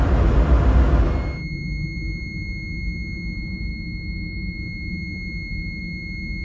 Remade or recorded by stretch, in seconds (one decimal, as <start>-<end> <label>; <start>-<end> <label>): 0.0-6.4 recorded